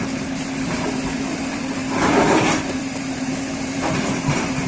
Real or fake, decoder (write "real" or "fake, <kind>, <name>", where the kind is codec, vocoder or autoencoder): fake, vocoder, BigVGAN v2